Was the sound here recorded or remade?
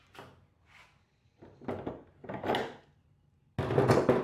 recorded